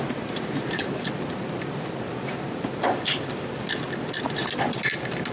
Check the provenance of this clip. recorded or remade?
recorded